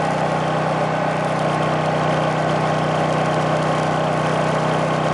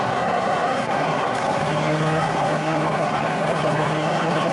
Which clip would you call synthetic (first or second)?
second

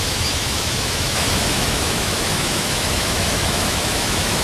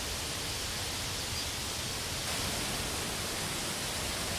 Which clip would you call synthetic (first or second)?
first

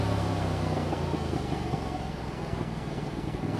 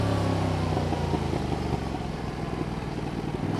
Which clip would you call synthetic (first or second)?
first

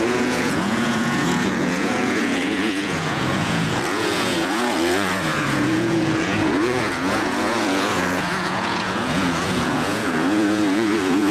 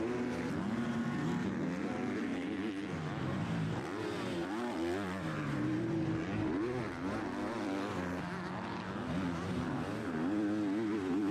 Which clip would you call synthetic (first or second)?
first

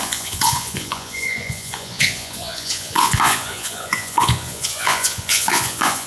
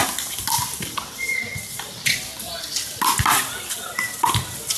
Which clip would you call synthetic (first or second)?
first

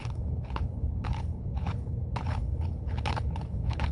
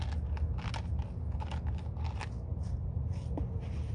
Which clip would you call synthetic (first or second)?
first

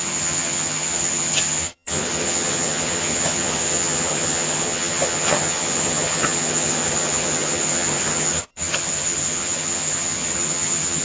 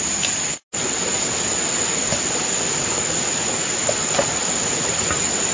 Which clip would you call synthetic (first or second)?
first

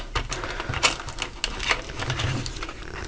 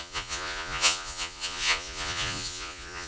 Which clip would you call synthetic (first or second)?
second